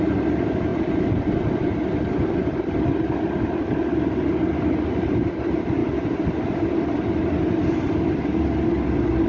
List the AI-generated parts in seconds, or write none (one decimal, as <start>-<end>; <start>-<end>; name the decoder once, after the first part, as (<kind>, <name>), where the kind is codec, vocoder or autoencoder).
none

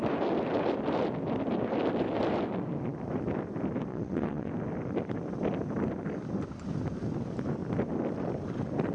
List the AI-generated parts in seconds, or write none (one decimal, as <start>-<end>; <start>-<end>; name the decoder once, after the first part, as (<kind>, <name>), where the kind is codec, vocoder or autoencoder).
3.9-4.5 (vocoder, WaveNeXt)

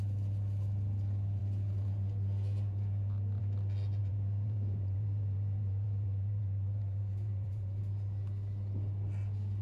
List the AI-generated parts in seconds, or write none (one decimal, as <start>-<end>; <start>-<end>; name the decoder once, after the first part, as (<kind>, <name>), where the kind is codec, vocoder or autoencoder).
4.0-7.8 (vocoder, BigVGAN v2)